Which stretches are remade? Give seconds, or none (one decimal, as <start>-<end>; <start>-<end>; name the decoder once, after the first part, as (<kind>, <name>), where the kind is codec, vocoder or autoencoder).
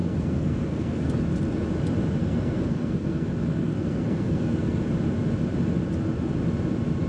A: 0.0-1.1 (codec, SNAC); 2.2-4.8